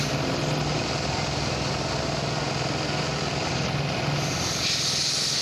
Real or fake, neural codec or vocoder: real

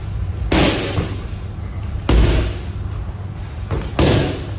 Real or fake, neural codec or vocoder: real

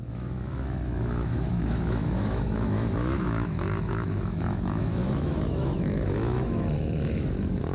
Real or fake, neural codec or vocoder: fake, autoencoder, DAC-VAE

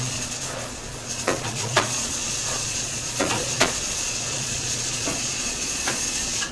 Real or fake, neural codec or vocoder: fake, vocoder, Vocos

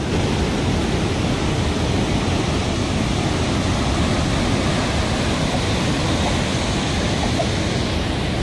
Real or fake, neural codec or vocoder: real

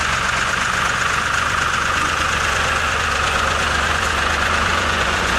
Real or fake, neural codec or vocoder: fake, vocoder, Vocos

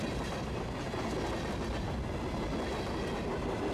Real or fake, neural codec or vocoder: real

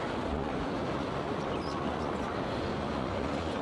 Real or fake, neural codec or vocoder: fake, vocoder, Vocos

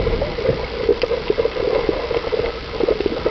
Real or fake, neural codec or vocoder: real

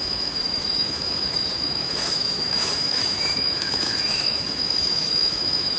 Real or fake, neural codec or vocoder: fake, autoencoder, DAC-VAE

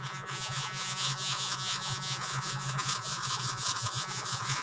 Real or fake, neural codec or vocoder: fake, vocoder, Vocos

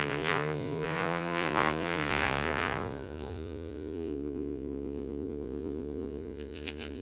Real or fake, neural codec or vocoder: fake, vocoder, Vocos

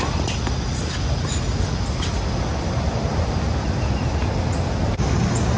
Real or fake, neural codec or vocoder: real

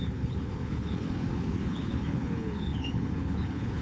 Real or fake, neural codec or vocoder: fake, codec, HILCodec